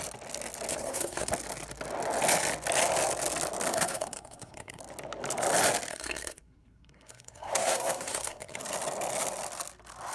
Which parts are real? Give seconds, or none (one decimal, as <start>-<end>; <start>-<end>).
0.0-0.7; 1.3-3.7; 4.8-5.9; 8.6-10.1